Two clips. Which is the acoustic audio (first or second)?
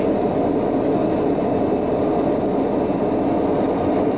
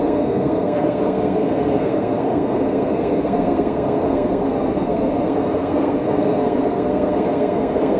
first